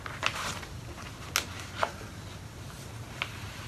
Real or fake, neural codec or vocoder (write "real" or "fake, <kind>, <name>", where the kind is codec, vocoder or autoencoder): real